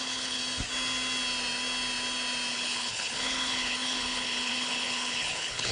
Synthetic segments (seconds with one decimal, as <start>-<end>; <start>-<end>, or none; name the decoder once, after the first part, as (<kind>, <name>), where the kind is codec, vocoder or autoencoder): 0.0-0.4 (codec, HILCodec); 2.5-5.7